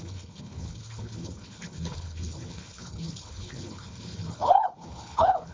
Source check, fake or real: fake